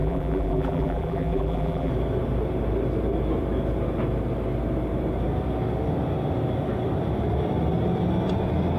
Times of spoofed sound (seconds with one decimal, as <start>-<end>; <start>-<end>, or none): 0.0-1.9